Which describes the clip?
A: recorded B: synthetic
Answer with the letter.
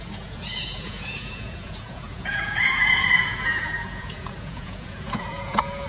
B